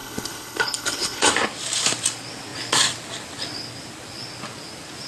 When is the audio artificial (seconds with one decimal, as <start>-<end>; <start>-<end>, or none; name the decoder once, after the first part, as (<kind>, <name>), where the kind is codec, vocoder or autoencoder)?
0.0-1.3 (codec, HILCodec)